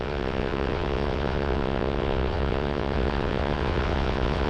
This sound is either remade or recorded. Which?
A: remade